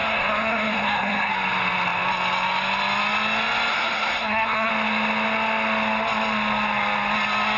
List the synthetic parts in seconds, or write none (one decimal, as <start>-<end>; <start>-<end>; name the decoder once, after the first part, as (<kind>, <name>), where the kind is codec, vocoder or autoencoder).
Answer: 0.0-1.3 (codec, SNAC); 3.7-4.7